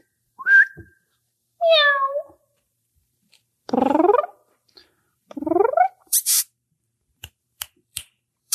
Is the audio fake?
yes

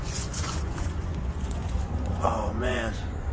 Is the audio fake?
yes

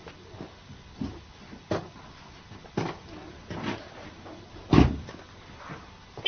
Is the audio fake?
no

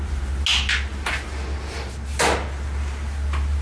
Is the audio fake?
no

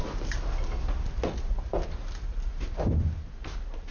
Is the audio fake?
no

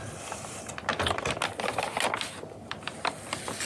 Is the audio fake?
no